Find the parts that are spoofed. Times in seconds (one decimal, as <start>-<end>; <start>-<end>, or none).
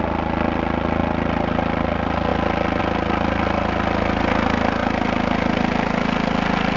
none